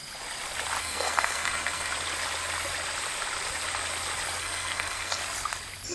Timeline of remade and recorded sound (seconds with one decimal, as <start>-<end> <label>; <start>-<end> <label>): 0.0-0.8 recorded; 0.8-1.9 remade; 1.9-4.4 recorded; 4.4-5.2 remade; 5.2-5.9 recorded